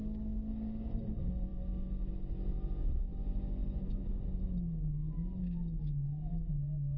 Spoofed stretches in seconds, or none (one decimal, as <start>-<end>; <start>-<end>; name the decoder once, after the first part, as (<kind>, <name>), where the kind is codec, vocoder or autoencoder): none